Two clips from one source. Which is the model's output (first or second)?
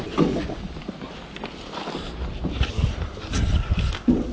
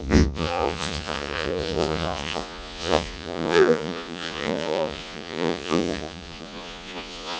second